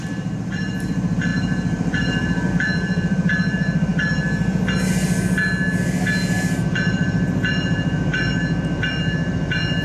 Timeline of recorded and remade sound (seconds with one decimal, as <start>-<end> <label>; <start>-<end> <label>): 0.0-3.9 remade; 3.9-6.7 recorded; 6.7-8.3 remade; 8.3-8.9 recorded; 8.9-9.8 remade